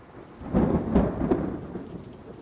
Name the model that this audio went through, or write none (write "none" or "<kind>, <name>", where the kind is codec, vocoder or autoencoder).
none